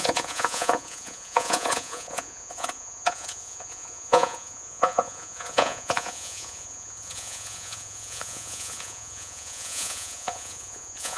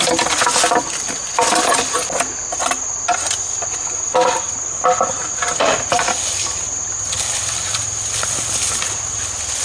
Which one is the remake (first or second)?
first